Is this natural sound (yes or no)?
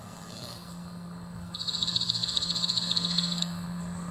no